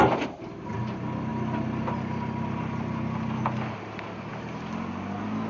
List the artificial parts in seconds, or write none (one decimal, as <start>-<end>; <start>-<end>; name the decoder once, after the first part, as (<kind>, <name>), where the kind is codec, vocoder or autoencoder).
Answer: none

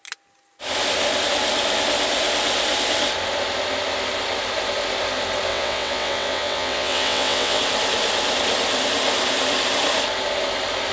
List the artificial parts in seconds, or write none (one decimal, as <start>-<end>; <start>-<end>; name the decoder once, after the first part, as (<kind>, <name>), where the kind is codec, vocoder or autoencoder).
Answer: 5.5-7.6 (vocoder, WaveNeXt)

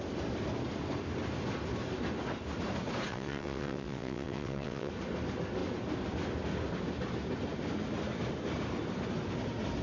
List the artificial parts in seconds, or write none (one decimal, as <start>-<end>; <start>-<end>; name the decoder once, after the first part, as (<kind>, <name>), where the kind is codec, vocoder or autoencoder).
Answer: 3.1-4.9 (vocoder, WaveNeXt)

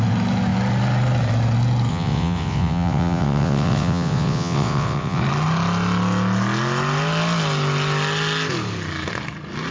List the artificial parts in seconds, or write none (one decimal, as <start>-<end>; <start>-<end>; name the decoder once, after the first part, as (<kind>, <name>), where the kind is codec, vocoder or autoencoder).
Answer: 1.9-5.2 (vocoder, WaveNeXt)